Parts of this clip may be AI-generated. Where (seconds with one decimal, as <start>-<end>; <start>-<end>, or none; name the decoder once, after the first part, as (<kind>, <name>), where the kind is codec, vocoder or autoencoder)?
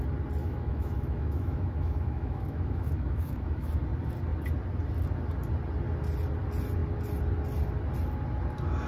0.4-3.7 (autoencoder, DAC-VAE)